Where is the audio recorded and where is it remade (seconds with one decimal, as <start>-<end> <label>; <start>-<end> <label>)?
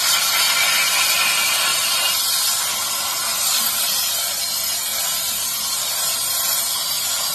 0.0-1.7 recorded; 1.7-2.4 remade; 2.4-4.9 recorded; 4.9-5.6 remade; 5.6-7.3 recorded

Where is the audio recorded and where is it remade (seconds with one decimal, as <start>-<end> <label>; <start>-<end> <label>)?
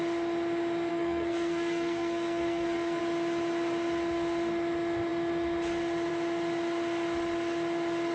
0.0-0.9 recorded; 0.9-3.0 remade; 3.0-8.1 recorded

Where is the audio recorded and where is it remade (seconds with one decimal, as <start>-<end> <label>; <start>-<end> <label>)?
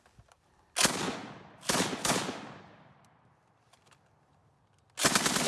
0.0-5.5 recorded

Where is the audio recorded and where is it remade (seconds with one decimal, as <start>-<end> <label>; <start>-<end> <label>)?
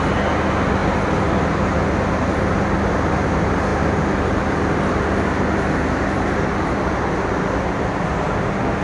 0.0-8.8 recorded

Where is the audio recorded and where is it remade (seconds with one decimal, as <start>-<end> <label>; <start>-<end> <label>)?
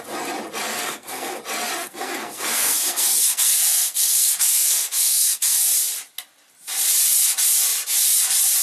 0.0-0.7 recorded; 0.7-1.4 remade; 1.4-1.8 recorded; 1.8-5.6 remade; 5.6-8.6 recorded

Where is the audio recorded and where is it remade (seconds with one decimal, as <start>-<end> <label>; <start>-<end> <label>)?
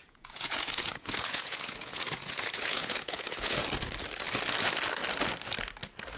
0.0-3.6 remade; 3.6-6.2 recorded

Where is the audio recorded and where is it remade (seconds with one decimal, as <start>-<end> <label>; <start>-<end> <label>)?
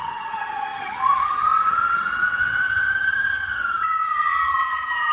0.0-5.1 remade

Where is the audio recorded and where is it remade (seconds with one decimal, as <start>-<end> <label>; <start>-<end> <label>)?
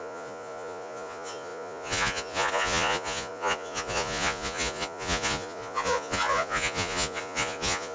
0.0-7.9 remade